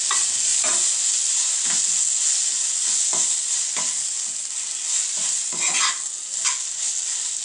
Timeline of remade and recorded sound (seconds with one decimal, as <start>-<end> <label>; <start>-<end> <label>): 0.0-7.4 recorded